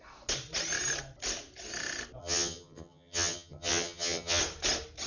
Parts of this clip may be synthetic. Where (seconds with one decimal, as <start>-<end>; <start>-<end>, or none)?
2.2-4.4